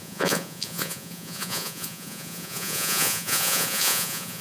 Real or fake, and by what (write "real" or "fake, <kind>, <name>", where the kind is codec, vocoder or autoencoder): fake, vocoder, Vocos